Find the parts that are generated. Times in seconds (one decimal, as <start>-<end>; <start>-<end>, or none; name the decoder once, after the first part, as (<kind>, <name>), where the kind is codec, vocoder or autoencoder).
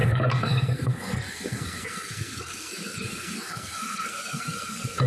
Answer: 0.0-5.1 (codec, SNAC)